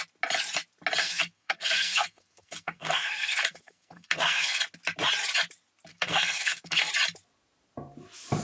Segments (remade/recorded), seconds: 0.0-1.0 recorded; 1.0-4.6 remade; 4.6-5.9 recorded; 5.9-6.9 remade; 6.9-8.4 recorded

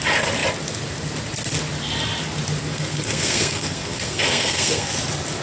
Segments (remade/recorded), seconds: 0.0-2.7 recorded; 2.7-4.9 remade; 4.9-5.4 recorded

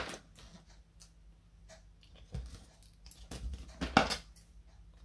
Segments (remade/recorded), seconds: 0.0-5.0 recorded

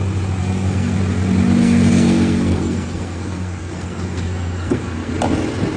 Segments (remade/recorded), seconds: 0.0-0.4 recorded; 0.4-1.0 remade; 1.0-1.6 recorded; 1.6-5.1 remade; 5.1-5.8 recorded

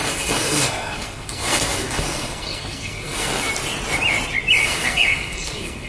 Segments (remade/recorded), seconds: 0.0-3.5 remade; 3.5-4.6 recorded; 4.6-5.9 remade